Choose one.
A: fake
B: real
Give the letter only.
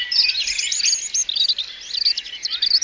B